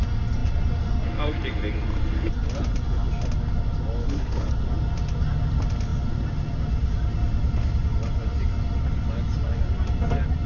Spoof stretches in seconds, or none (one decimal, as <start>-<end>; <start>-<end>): 4.0-4.5